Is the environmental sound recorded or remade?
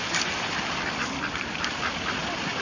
remade